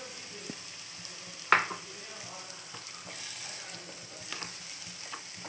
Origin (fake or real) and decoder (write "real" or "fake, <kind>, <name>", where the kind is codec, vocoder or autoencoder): real